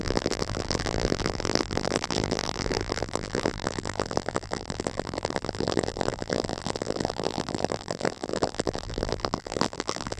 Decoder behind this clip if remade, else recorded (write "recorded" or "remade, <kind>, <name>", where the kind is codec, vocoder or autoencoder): remade, vocoder, BigVGAN v2